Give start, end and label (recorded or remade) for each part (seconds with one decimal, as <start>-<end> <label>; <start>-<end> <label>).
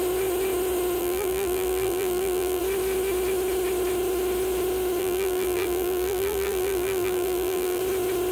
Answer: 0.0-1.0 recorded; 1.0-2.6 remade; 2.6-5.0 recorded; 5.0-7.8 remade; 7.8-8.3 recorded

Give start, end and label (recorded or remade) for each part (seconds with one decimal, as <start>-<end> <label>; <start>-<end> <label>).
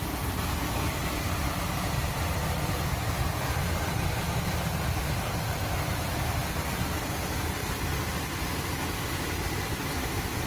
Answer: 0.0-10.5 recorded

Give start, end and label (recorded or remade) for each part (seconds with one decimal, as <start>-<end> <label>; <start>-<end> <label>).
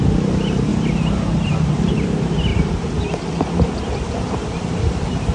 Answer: 0.0-0.7 remade; 0.7-1.9 recorded; 1.9-5.3 remade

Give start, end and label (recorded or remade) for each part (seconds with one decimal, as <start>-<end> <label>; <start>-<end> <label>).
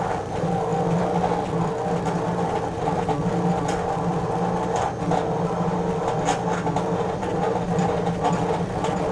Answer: 0.0-9.1 recorded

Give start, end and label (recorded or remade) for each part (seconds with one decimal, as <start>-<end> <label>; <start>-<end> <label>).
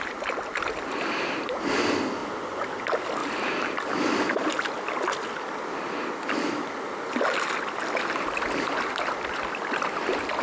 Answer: 0.0-10.4 recorded